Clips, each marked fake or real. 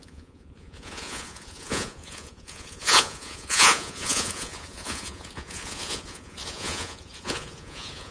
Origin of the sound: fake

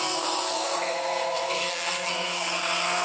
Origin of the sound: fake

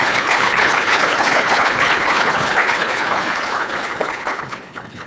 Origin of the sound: fake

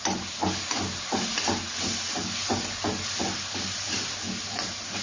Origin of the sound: real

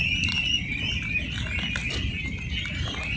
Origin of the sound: real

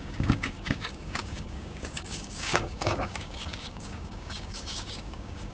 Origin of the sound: fake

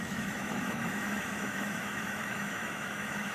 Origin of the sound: fake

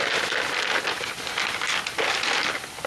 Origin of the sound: real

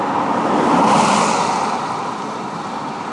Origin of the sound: real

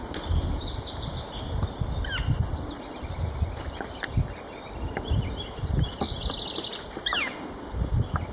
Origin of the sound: real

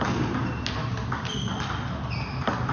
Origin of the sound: real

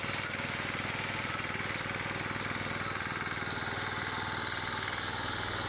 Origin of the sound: real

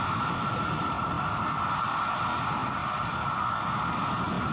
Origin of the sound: real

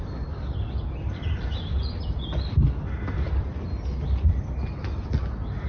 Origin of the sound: real